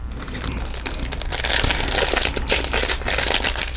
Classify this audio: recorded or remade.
recorded